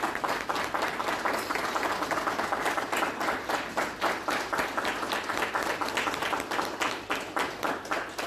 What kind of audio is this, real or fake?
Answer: real